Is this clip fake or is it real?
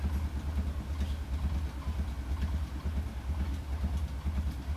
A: real